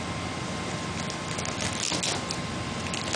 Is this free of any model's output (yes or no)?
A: yes